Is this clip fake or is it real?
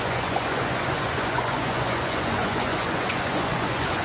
fake